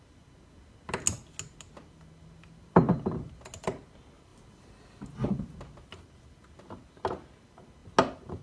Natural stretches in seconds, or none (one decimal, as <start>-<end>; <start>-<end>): 0.0-8.4